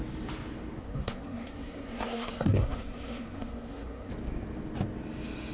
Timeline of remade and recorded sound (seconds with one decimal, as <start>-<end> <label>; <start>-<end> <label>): 0.0-0.8 recorded; 0.8-4.1 remade; 4.1-5.5 recorded